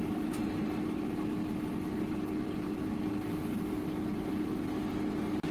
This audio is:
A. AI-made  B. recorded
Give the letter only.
B